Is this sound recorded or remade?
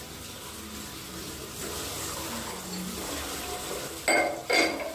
recorded